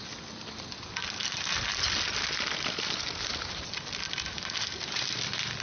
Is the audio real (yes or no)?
yes